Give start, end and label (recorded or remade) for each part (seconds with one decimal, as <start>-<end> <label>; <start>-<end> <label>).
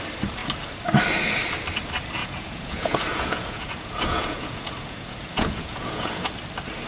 0.0-2.2 recorded; 2.2-6.3 remade; 6.3-6.9 recorded